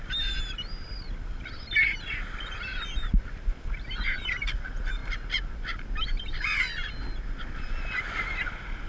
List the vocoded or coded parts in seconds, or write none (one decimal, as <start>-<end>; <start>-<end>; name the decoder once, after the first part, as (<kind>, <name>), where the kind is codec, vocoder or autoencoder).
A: none